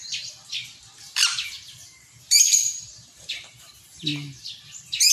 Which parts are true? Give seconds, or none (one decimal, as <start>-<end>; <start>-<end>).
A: 0.0-0.8; 4.1-4.6